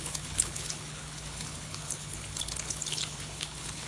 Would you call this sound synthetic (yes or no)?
yes